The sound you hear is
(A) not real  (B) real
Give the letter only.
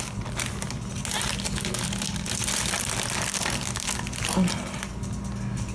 B